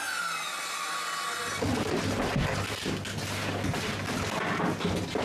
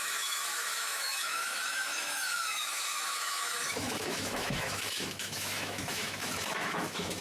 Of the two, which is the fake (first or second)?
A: second